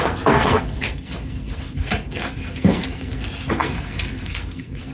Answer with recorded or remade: remade